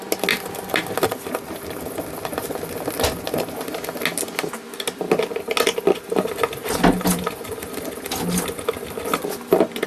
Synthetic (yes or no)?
no